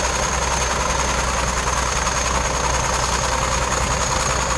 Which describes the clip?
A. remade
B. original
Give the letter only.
B